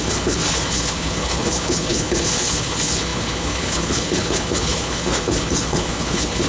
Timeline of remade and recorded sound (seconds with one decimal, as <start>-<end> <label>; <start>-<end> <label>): 0.0-6.5 remade